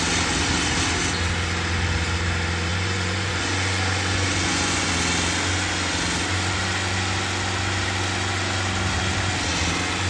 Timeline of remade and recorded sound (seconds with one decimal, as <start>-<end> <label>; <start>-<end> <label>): 0.0-2.7 recorded; 2.7-4.9 remade; 4.9-10.1 recorded